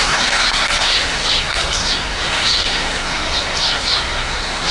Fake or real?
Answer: fake